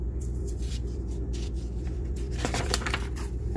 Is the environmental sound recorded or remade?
remade